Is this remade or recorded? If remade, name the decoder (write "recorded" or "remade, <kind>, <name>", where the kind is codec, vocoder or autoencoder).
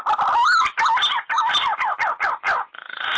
recorded